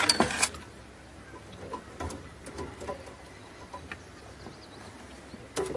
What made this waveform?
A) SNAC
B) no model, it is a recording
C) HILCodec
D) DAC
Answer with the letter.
B